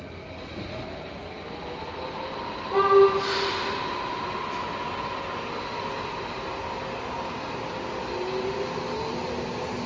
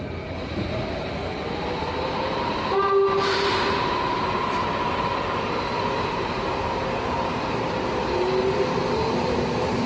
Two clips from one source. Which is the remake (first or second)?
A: second